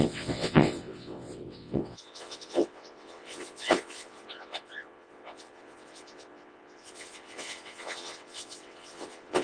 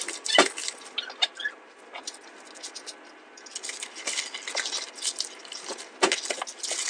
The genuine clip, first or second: second